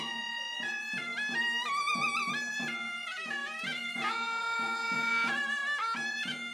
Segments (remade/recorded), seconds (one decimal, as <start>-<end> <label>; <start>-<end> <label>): 0.0-1.1 remade; 1.1-2.5 recorded; 2.5-5.6 remade; 5.6-6.1 recorded; 6.1-6.5 remade